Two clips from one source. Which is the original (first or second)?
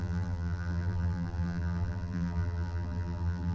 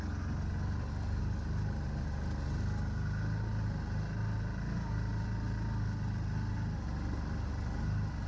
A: second